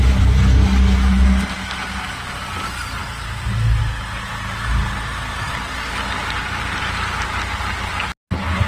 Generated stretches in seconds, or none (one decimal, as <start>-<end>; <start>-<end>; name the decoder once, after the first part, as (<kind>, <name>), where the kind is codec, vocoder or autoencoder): none